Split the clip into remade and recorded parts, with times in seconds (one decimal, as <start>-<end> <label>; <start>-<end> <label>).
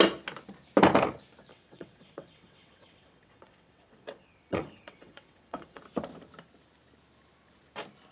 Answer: 0.0-1.5 recorded; 1.5-5.8 remade; 5.8-8.1 recorded